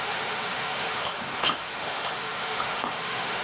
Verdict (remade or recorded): remade